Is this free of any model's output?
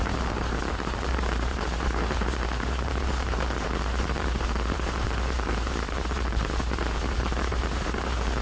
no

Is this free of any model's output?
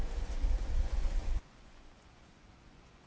no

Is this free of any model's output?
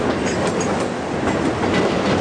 yes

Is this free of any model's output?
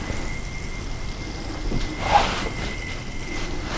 yes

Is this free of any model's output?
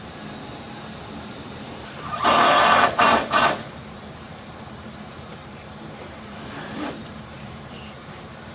no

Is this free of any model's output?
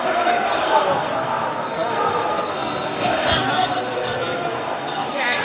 no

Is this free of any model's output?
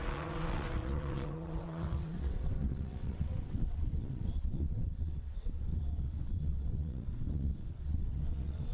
no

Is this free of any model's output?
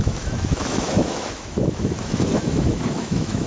no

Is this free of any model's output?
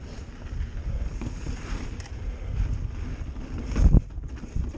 yes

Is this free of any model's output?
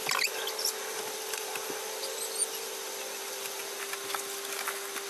yes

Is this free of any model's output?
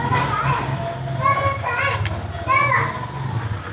yes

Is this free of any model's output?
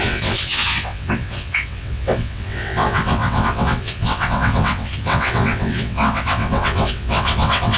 no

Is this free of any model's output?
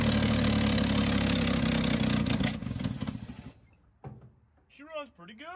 yes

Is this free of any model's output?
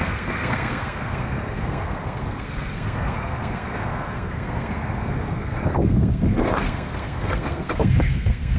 no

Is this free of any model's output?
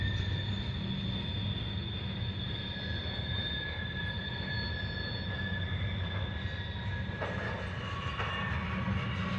yes